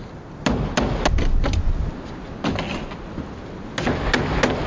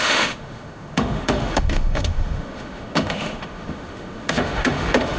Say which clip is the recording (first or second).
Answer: first